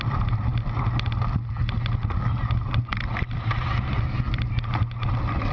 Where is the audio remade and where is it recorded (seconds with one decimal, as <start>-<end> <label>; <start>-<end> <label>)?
0.0-5.5 recorded